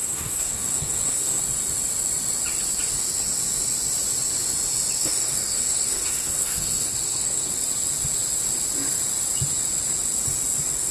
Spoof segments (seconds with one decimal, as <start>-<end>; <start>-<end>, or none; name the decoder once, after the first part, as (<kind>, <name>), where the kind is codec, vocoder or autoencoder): 0.0-1.4 (codec, SNAC); 5.0-7.5